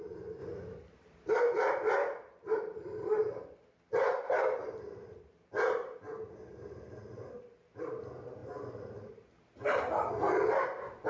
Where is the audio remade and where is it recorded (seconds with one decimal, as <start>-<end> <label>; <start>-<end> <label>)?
0.0-8.4 remade; 8.4-11.1 recorded